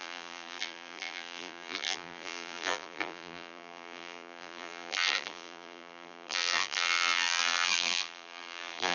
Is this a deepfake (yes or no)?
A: yes